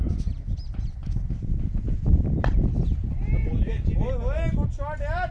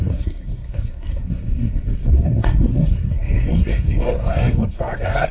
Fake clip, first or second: second